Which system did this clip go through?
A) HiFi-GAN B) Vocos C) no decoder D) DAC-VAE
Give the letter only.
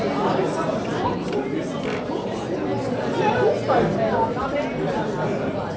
C